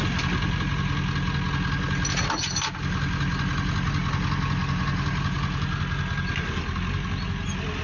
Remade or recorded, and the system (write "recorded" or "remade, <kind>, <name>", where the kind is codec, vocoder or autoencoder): recorded